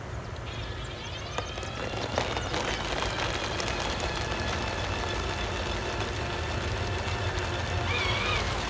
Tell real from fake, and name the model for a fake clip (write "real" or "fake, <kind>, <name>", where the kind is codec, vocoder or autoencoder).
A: real